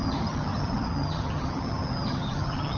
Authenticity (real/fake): fake